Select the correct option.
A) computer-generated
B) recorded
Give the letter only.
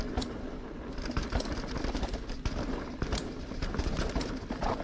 B